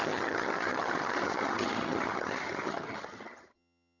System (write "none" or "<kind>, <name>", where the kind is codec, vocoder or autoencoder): vocoder, HiFi-GAN